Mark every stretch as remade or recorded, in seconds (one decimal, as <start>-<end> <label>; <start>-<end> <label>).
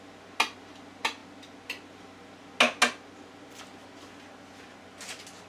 0.0-5.5 recorded